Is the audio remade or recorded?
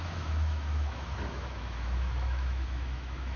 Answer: remade